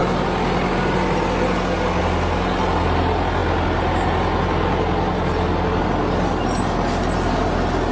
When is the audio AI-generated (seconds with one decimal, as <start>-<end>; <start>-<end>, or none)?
none